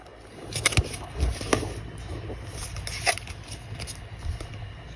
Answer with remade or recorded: recorded